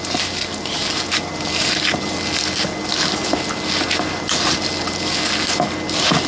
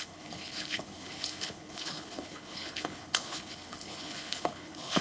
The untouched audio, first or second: first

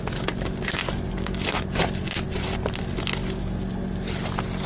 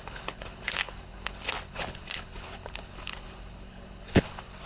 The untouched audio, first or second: first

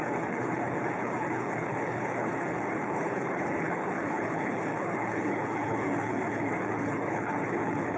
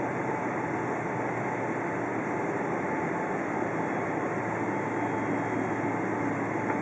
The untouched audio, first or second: second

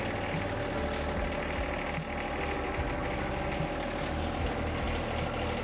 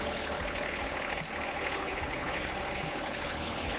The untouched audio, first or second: first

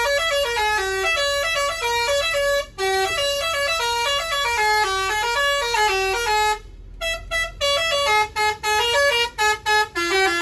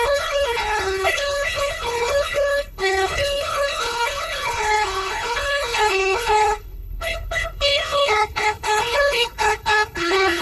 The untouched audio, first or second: first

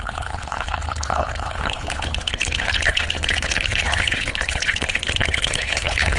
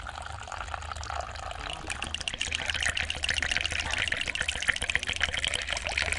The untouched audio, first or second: second